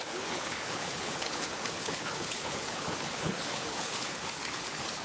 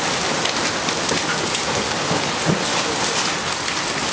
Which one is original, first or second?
second